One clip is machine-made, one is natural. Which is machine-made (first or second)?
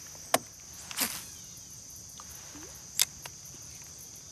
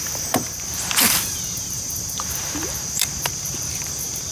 second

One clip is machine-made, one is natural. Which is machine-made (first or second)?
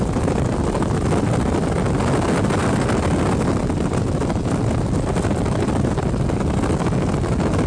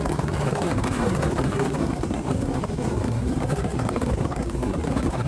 second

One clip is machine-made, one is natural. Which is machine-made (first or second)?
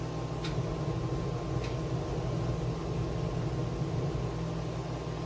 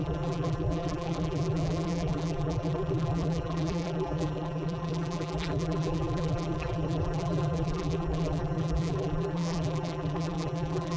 second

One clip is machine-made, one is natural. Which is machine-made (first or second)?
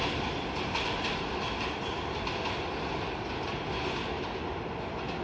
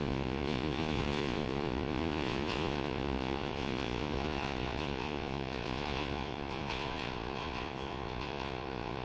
second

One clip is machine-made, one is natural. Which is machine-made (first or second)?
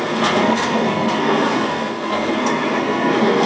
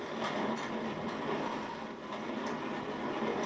first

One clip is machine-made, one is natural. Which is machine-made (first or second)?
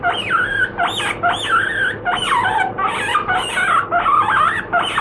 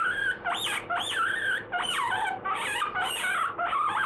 second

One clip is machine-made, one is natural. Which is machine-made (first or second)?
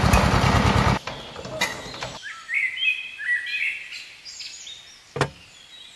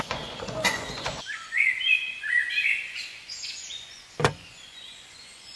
second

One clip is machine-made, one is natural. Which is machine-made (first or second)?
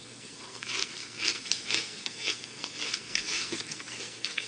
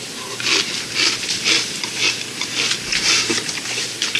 first